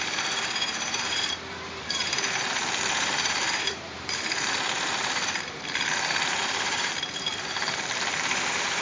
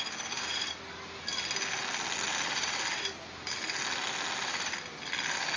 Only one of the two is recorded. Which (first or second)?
second